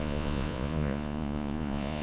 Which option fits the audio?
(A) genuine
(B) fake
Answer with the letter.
B